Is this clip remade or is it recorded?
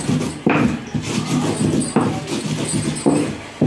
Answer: recorded